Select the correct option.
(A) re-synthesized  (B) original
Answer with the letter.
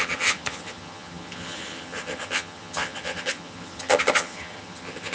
A